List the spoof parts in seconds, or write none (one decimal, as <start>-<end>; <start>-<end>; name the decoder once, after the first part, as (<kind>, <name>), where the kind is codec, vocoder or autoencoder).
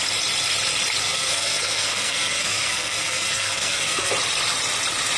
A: 1.0-4.1 (codec, SNAC)